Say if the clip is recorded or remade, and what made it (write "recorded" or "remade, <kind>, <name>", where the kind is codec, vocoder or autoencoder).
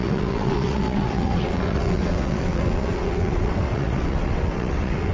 remade, vocoder, WaveNeXt